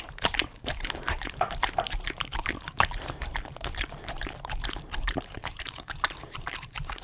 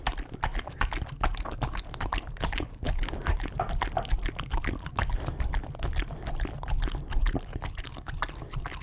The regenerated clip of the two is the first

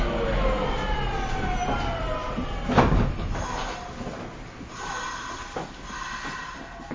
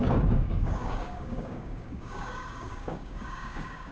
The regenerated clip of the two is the second